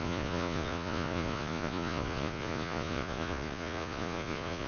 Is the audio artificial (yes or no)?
yes